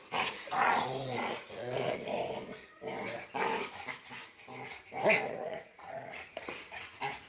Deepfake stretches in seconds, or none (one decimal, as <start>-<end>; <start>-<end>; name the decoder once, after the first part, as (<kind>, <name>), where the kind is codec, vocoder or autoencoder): 0.0-2.0 (vocoder, Vocos); 5.3-7.3